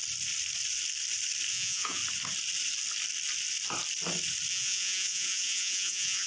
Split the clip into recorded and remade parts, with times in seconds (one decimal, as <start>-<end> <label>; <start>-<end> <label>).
0.0-1.5 recorded; 1.5-2.0 remade; 2.0-4.5 recorded; 4.5-6.3 remade